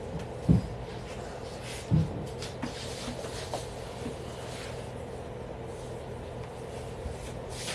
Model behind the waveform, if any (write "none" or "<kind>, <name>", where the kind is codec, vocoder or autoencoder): none